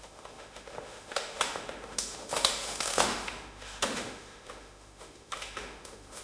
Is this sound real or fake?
fake